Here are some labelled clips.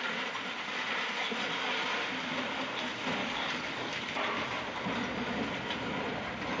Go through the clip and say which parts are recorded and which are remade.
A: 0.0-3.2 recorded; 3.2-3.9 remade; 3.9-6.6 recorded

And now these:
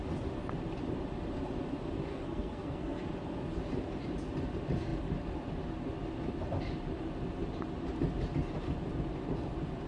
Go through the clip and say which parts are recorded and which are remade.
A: 0.0-2.1 recorded; 2.1-3.0 remade; 3.0-9.9 recorded

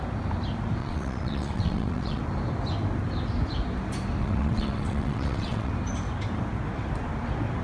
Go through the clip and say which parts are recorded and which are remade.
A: 0.0-0.8 recorded; 0.8-2.2 remade; 2.2-4.2 recorded; 4.2-5.7 remade; 5.7-7.6 recorded